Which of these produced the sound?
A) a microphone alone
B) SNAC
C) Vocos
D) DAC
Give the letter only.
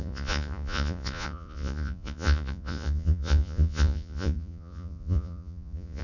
C